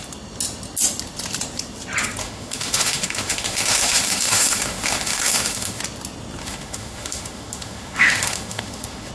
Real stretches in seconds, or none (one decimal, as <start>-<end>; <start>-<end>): 0.0-2.2; 5.8-6.4